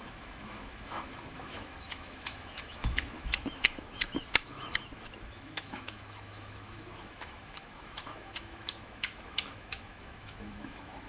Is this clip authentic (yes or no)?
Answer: no